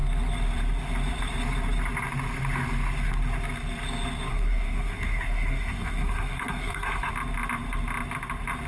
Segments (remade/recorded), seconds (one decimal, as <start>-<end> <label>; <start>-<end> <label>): 0.0-4.3 recorded; 4.3-7.1 remade; 7.1-8.7 recorded